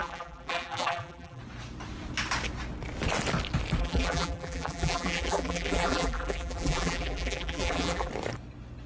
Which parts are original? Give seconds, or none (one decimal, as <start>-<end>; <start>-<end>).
1.4-3.8; 8.1-8.9